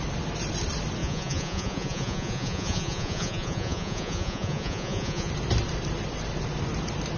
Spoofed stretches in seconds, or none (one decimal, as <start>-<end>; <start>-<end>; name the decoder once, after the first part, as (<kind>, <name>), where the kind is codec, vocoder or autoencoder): 1.0-5.3 (vocoder, Vocos)